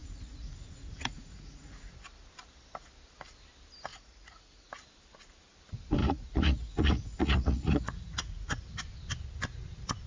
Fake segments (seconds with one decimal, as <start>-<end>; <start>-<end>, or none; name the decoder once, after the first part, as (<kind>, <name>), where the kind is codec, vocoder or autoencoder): 0.0-1.9 (vocoder, Vocos); 3.9-4.7; 6.0-8.6